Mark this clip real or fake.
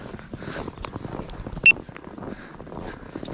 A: real